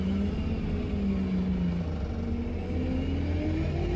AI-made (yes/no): no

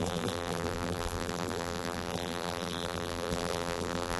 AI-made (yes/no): yes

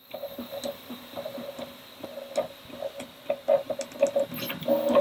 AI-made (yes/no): no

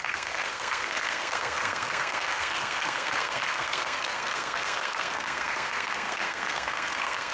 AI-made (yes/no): yes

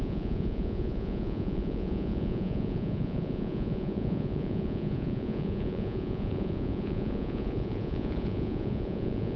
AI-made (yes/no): yes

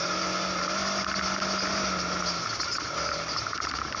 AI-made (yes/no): no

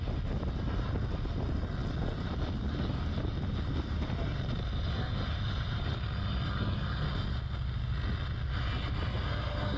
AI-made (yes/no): no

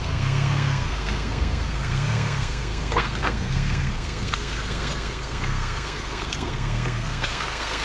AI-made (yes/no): yes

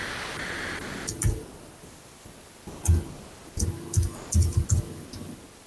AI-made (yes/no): no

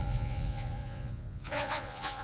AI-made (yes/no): yes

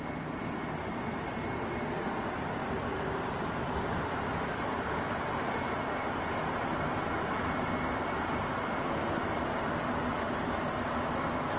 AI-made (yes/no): yes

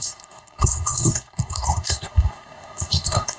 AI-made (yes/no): yes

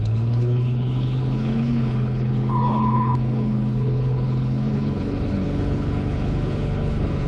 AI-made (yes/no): yes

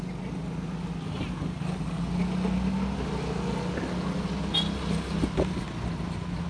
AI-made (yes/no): no